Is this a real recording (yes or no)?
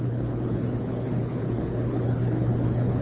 no